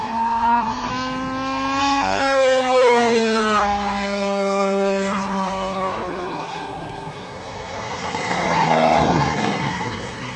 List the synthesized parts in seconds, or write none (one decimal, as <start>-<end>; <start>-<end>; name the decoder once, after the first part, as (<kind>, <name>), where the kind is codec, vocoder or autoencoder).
0.0-0.9 (codec, SNAC); 1.8-10.4